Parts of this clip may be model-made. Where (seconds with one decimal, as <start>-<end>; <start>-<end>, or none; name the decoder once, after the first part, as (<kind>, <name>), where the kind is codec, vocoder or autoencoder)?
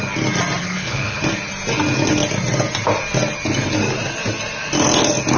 0.6-1.2 (codec, HILCodec)